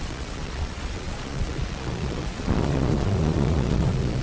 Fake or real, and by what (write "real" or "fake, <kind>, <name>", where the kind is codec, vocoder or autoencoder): fake, vocoder, Vocos